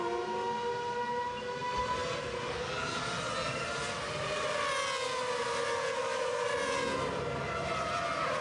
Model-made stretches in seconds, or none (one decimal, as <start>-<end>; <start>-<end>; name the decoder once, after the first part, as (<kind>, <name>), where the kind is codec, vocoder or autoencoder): none